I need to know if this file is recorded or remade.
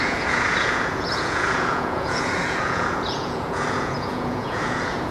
remade